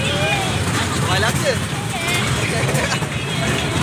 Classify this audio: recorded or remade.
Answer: recorded